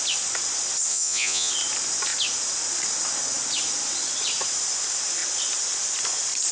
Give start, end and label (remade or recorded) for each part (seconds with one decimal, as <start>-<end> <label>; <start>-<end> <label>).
0.0-0.9 recorded; 0.9-1.5 remade; 1.5-6.5 recorded